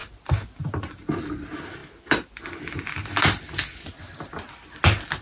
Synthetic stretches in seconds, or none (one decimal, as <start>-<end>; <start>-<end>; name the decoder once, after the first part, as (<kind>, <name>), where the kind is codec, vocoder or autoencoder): none